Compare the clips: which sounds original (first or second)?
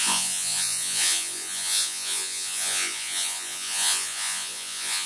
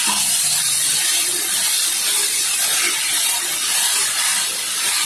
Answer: second